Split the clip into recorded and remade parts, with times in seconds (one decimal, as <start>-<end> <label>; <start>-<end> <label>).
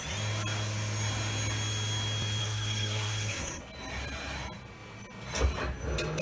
0.0-2.4 recorded; 2.4-3.6 remade; 3.6-6.2 recorded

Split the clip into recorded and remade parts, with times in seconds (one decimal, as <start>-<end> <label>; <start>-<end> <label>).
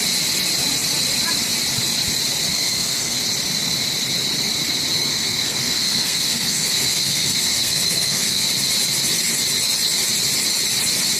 0.0-2.5 recorded; 2.5-3.2 remade; 3.2-5.1 recorded; 5.1-8.5 remade; 8.5-11.2 recorded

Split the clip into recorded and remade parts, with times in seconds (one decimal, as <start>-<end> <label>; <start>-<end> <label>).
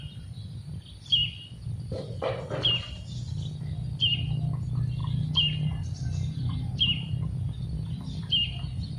0.0-9.0 recorded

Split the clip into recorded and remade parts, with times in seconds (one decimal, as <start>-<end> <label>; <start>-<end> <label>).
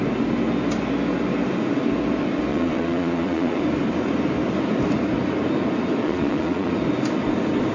0.0-2.5 recorded; 2.5-3.6 remade; 3.6-6.0 recorded; 6.0-6.7 remade; 6.7-7.7 recorded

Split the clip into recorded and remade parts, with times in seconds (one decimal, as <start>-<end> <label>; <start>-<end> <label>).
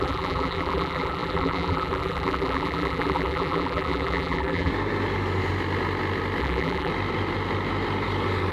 0.0-4.7 remade; 4.7-6.4 recorded; 6.4-6.9 remade; 6.9-8.5 recorded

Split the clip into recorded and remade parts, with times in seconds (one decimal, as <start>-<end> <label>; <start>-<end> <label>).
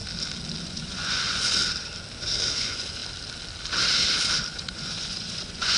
0.0-0.6 recorded; 0.6-1.6 remade; 1.6-2.6 recorded; 2.6-3.0 remade; 3.0-4.5 recorded; 4.5-5.8 remade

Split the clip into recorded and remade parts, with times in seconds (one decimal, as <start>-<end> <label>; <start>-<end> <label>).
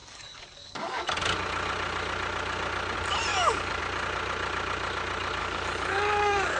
0.0-1.1 remade; 1.1-3.3 recorded; 3.3-3.8 remade; 3.8-5.4 recorded; 5.4-6.6 remade